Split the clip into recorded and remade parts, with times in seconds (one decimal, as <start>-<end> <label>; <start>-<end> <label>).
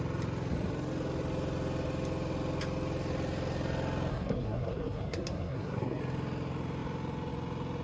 0.0-4.1 recorded; 4.1-6.0 remade; 6.0-7.8 recorded